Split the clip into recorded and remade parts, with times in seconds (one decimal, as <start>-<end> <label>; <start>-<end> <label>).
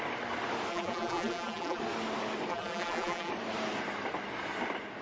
0.0-0.7 recorded; 0.7-1.8 remade; 1.8-2.5 recorded; 2.5-3.3 remade; 3.3-5.0 recorded